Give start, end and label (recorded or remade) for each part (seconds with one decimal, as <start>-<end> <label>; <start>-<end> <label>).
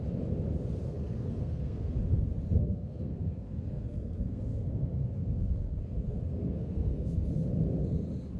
0.0-0.9 recorded; 0.9-2.0 remade; 2.0-2.6 recorded; 2.6-7.3 remade; 7.3-8.4 recorded